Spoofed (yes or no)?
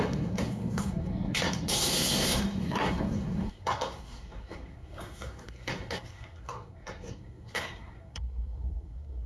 yes